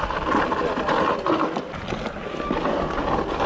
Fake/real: real